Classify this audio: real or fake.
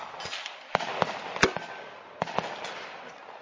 real